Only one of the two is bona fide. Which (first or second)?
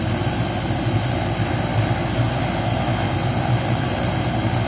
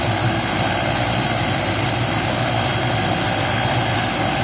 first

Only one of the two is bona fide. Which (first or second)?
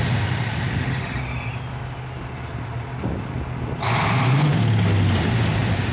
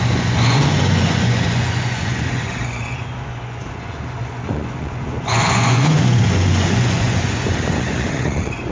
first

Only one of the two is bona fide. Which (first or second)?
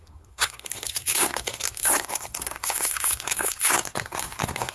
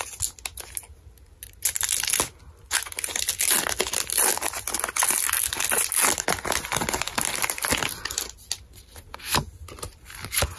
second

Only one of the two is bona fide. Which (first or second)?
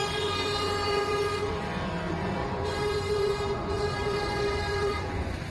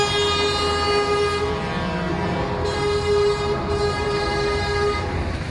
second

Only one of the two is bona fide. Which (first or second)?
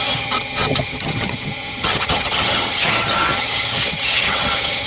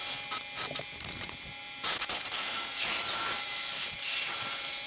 second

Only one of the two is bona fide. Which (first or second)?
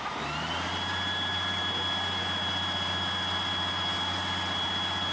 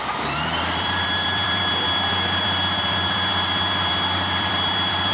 first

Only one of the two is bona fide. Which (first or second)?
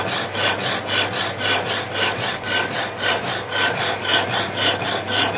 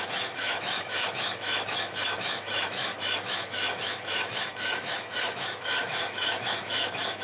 first